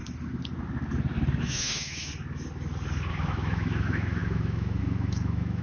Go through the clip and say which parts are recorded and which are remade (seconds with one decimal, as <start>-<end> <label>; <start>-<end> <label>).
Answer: 0.0-1.4 recorded; 1.4-2.1 remade; 2.1-3.1 recorded; 3.1-5.6 remade